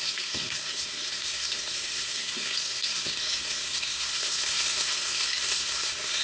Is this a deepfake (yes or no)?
yes